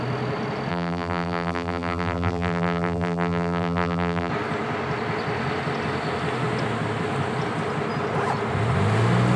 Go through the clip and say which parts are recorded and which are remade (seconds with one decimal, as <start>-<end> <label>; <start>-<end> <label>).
0.0-0.7 recorded; 0.7-4.3 remade; 4.3-9.4 recorded